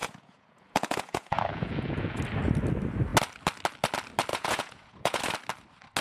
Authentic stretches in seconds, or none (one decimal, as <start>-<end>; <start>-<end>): 2.2-4.3; 5.2-6.0